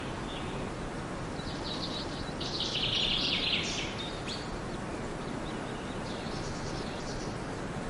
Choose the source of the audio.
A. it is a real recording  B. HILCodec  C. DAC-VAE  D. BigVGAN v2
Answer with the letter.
A